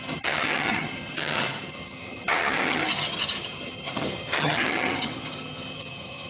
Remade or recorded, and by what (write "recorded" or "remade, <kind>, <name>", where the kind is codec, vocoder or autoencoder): remade, vocoder, HiFi-GAN